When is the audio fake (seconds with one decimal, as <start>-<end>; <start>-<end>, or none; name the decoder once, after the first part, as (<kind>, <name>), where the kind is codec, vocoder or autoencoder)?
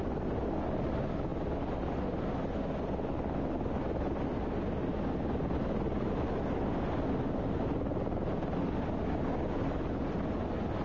none